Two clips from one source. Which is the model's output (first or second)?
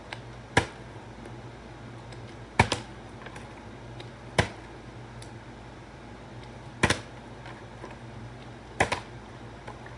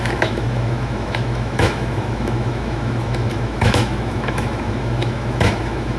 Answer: second